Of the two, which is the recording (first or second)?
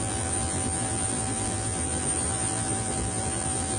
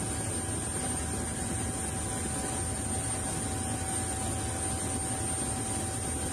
second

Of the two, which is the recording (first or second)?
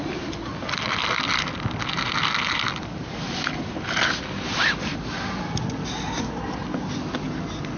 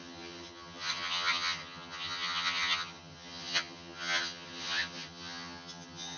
first